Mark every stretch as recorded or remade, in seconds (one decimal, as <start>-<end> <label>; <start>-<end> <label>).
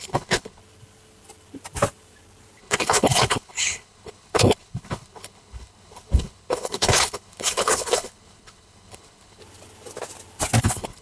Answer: 0.0-0.6 remade; 0.6-2.6 recorded; 2.6-9.4 remade; 9.4-10.6 recorded; 10.6-11.0 remade